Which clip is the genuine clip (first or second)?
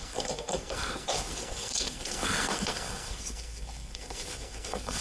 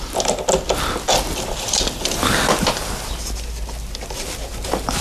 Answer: second